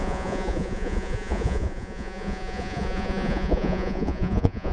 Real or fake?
fake